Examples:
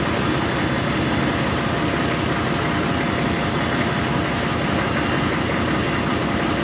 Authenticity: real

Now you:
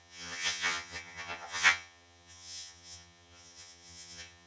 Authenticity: fake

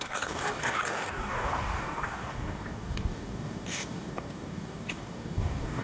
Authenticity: fake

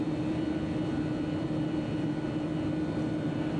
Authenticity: fake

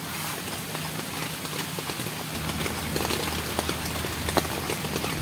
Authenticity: real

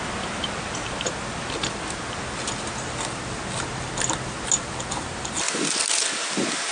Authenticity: real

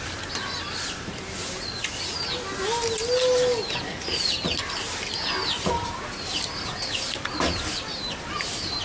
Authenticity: real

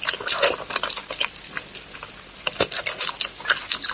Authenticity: real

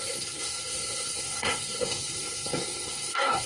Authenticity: fake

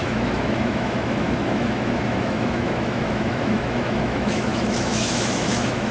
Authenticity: fake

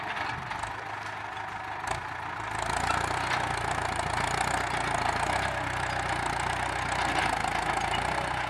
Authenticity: real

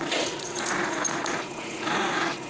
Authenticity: fake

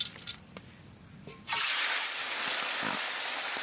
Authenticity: real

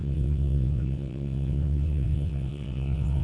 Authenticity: fake